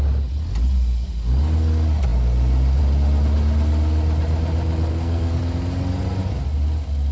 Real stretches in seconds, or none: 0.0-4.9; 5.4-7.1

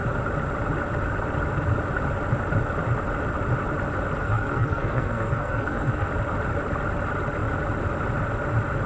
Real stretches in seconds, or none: 0.0-4.2; 6.1-8.9

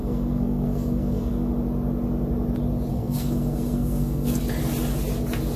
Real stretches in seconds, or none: 1.5-2.9; 4.4-5.6

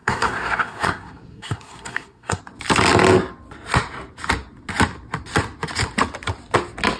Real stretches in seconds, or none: 2.4-7.0